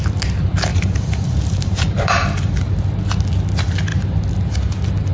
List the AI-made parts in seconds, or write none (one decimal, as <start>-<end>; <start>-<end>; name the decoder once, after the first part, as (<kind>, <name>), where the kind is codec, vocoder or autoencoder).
0.7-2.8 (vocoder, BigVGAN v2)